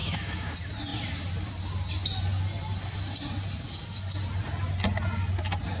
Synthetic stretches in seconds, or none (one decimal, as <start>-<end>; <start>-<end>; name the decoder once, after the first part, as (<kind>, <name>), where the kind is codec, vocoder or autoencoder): 0.0-0.5 (autoencoder, DAC-VAE)